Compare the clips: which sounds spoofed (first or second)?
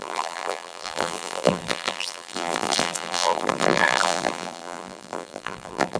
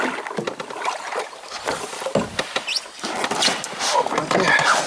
first